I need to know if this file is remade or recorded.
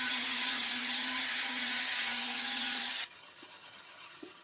remade